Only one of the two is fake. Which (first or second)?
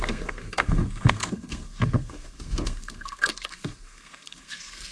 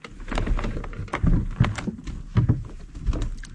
first